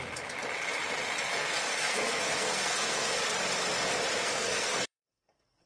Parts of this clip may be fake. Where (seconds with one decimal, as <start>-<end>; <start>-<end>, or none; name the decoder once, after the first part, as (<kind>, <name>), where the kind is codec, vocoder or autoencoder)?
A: 1.3-3.2 (codec, SNAC); 4.2-5.7